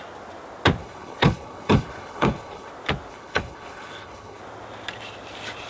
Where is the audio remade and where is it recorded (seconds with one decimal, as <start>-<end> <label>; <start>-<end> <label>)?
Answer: 0.0-0.8 recorded; 0.8-2.7 remade; 2.7-3.1 recorded; 3.1-4.4 remade; 4.4-5.7 recorded